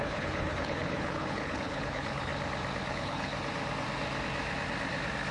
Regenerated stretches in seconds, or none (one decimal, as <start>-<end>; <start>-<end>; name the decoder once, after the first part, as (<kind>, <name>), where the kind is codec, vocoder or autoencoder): 0.0-2.3 (codec, HILCodec); 2.9-3.3